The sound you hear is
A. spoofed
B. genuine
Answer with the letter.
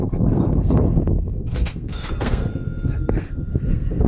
A